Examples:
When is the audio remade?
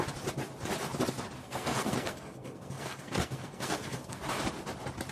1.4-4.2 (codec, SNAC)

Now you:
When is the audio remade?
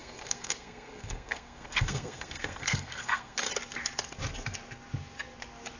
0.0-3.5 (codec, SNAC)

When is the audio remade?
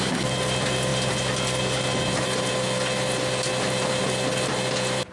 none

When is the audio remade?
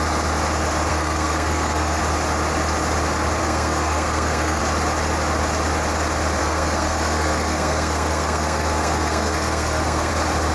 0.9-2.0 (codec, SNAC); 3.4-4.6; 6.4-10.1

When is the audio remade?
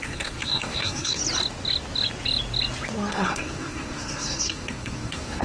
0.0-1.2 (codec, SNAC); 3.1-5.4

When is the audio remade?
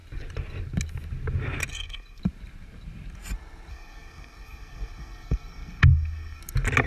1.7-2.2 (codec, SNAC); 3.7-6.4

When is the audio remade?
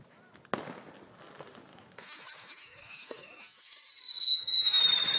1.7-4.8 (autoencoder, DAC-VAE)